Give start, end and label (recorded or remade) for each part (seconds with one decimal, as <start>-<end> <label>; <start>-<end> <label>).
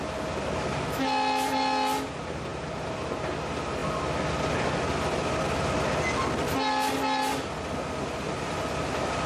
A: 0.0-2.5 recorded; 2.5-3.3 remade; 3.3-9.3 recorded